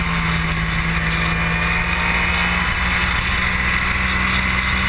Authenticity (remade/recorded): recorded